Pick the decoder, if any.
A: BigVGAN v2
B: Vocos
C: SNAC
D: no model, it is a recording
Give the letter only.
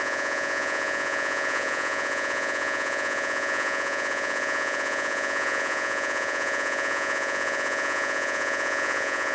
B